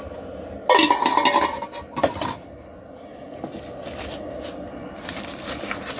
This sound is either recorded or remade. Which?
recorded